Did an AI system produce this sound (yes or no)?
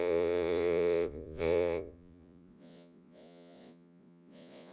yes